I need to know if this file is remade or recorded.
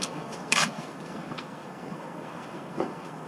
remade